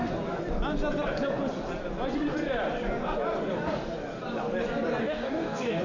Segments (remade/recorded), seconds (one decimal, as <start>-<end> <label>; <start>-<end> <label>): 0.0-5.0 recorded; 5.0-5.8 remade